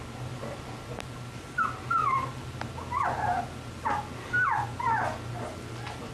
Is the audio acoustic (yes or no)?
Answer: yes